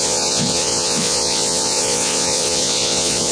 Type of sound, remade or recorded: remade